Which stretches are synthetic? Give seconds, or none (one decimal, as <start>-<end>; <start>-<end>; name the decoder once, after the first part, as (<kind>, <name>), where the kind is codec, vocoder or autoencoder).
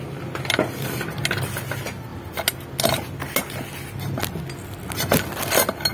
none